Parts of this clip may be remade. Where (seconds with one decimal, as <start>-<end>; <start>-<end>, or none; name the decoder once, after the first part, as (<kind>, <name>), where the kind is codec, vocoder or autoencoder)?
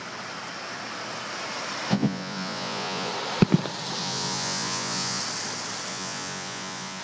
1.9-3.1 (vocoder, Vocos); 4.0-5.2; 5.9-7.0